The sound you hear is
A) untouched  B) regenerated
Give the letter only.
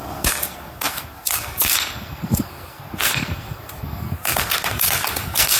B